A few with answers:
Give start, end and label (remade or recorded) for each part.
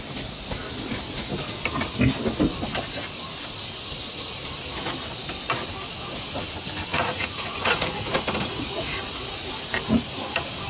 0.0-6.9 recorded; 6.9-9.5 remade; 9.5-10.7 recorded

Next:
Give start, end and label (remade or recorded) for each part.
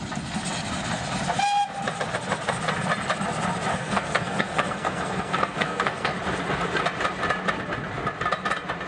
0.0-3.7 recorded; 3.7-6.1 remade; 6.1-8.9 recorded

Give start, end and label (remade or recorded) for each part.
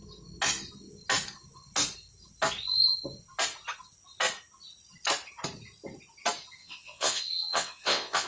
0.0-6.6 recorded; 6.6-8.3 remade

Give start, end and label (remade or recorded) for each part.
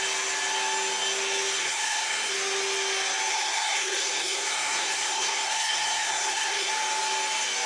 0.0-1.6 recorded; 1.6-2.3 remade; 2.3-3.3 recorded; 3.3-6.7 remade; 6.7-7.7 recorded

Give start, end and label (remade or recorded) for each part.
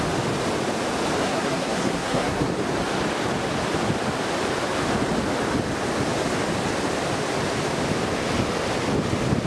0.0-1.2 recorded; 1.2-2.5 remade; 2.5-9.5 recorded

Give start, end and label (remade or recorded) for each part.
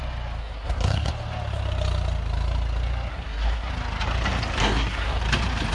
0.0-0.4 recorded; 0.4-1.1 remade; 1.1-3.1 recorded; 3.1-3.7 remade; 3.7-4.6 recorded; 4.6-5.2 remade; 5.2-5.7 recorded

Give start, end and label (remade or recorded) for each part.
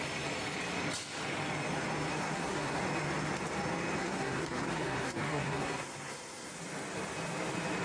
0.0-2.1 recorded; 2.1-2.8 remade; 2.8-4.0 recorded; 4.0-6.5 remade; 6.5-7.8 recorded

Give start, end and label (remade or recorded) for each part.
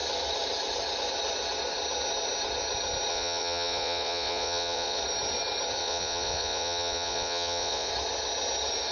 0.0-3.1 recorded; 3.1-5.0 remade; 5.0-5.8 recorded; 5.8-7.9 remade; 7.9-8.9 recorded